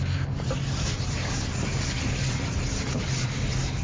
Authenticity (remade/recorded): recorded